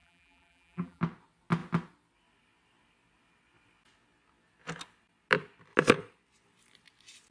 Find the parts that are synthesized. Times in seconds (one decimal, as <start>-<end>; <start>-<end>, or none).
0.0-1.0